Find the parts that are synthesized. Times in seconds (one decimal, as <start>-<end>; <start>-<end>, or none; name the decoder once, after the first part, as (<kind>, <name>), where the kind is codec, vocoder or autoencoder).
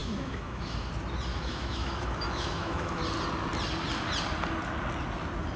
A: 0.0-0.9 (autoencoder, DAC-VAE); 1.3-3.0